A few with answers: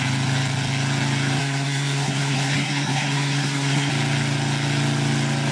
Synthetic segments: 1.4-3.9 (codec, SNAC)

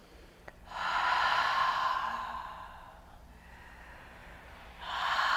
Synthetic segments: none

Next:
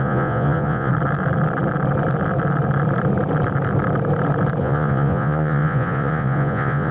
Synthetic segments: 0.0-0.9 (vocoder, Vocos); 4.6-6.9

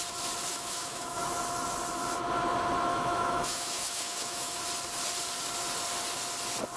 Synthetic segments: 0.5-1.2 (autoencoder, DAC-VAE); 2.9-4.6

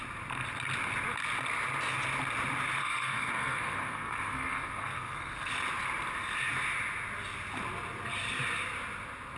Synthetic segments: 2.8-5.5 (codec, SNAC)

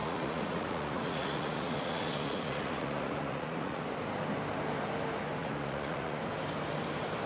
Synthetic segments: 0.0-3.8 (vocoder, Vocos); 5.4-6.2

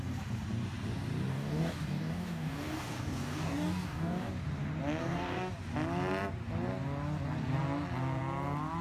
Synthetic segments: 1.3-4.3 (codec, DAC); 5.0-5.5